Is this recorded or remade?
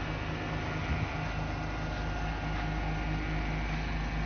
recorded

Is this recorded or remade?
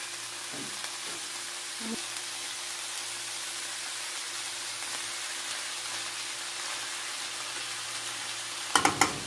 recorded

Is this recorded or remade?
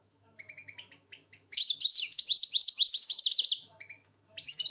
remade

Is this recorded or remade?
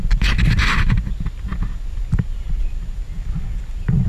recorded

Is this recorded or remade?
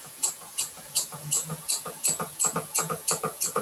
remade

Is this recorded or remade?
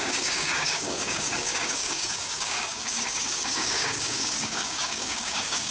remade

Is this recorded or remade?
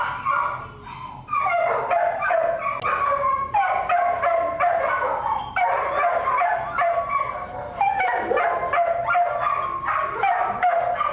recorded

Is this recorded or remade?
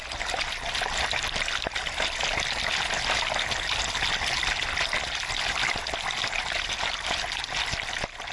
recorded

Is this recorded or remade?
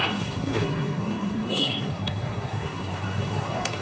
remade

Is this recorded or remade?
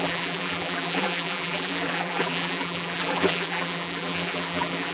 remade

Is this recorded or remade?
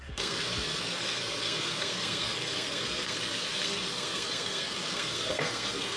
remade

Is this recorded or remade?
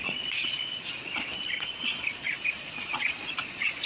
remade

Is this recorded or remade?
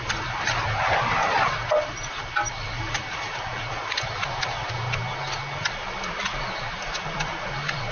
recorded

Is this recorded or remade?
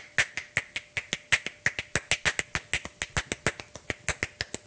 recorded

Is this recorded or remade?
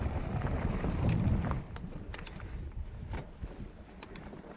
recorded